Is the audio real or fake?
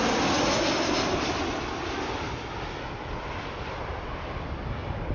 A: real